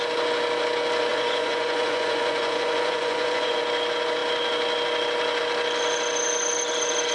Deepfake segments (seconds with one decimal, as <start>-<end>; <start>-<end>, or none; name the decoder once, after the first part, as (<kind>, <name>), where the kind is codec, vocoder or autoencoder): 1.1-3.6 (vocoder, Vocos)